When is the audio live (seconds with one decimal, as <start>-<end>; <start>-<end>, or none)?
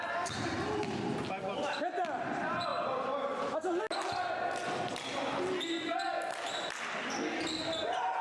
0.0-8.2